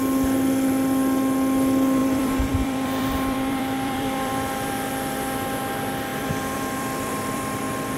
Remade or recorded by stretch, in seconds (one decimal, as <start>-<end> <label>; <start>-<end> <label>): 0.0-2.0 recorded; 2.0-4.9 remade; 4.9-6.1 recorded; 6.1-7.6 remade; 7.6-8.0 recorded